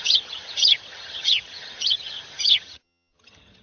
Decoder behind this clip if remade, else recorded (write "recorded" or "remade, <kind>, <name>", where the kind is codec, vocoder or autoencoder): remade, vocoder, HiFi-GAN